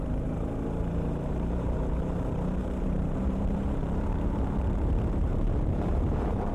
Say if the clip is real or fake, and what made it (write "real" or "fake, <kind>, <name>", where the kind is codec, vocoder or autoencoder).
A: fake, vocoder, BigVGAN v2